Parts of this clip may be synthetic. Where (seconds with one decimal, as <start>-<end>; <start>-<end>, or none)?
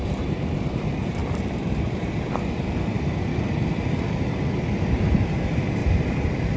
0.0-3.3; 5.1-6.6